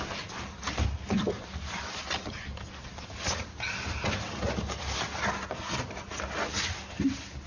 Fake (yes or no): no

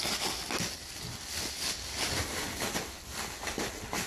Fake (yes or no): no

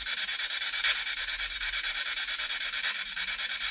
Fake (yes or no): yes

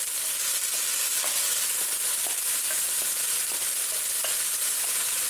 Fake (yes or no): no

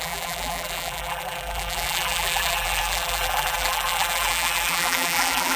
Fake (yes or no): yes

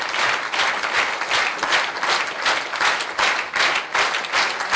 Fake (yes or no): no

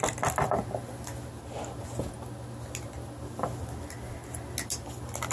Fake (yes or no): no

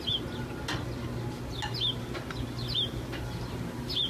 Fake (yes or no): no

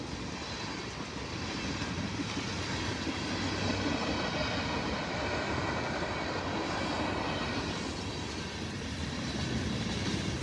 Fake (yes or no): no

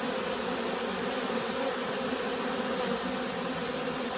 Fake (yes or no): no